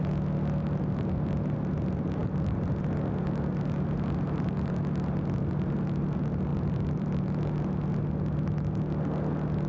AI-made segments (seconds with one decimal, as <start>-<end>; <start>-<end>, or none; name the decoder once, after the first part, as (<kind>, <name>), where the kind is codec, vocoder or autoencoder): 2.2-2.8 (vocoder, BigVGAN v2); 6.5-7.2